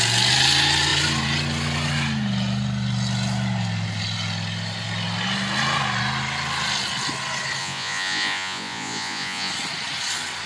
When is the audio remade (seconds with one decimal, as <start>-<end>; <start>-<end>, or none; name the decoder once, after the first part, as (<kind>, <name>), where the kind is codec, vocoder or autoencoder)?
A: 7.6-9.5 (vocoder, Vocos)